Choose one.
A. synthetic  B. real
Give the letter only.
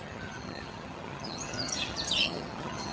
A